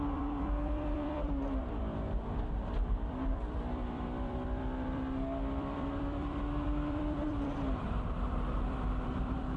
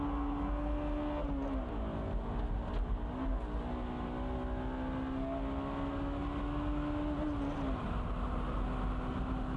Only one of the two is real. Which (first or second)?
second